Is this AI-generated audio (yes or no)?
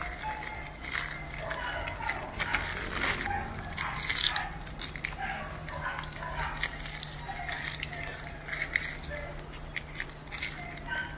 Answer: no